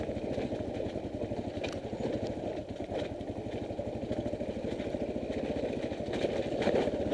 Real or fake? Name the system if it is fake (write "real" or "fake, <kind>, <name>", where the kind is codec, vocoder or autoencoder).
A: real